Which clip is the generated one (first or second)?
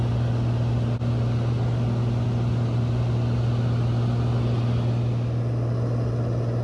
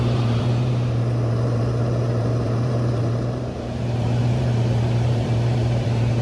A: second